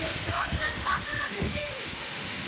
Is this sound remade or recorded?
remade